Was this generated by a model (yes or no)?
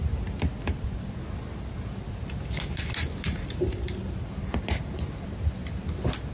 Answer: no